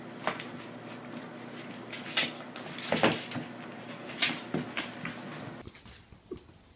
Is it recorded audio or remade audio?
recorded